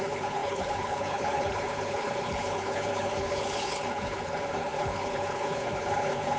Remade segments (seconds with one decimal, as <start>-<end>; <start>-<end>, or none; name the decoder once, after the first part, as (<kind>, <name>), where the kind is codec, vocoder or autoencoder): 0.0-6.4 (codec, HILCodec)